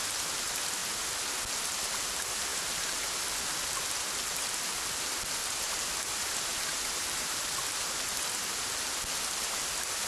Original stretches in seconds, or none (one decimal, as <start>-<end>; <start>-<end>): 0.0-2.5; 3.0-6.5; 7.6-10.1